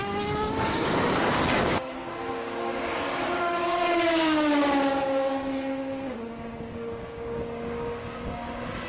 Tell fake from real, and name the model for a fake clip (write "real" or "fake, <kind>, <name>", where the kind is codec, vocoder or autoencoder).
fake, codec, DAC